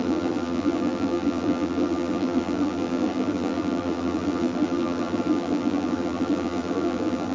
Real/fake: fake